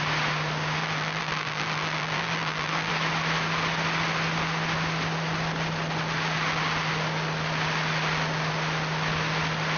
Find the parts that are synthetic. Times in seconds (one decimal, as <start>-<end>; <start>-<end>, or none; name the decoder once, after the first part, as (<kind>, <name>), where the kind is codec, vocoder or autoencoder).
0.8-2.9 (vocoder, BigVGAN v2)